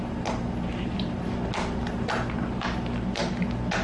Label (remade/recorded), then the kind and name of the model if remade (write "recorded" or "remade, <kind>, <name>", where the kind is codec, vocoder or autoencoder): recorded